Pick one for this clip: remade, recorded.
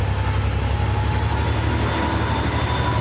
recorded